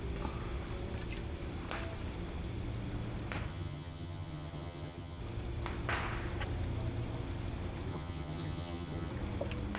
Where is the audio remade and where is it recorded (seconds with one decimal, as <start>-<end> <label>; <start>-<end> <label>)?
0.0-3.5 recorded; 3.5-5.2 remade; 5.2-7.9 recorded; 7.9-9.1 remade; 9.1-9.8 recorded